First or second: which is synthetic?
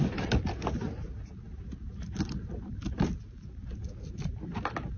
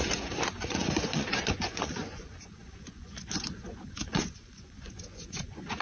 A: second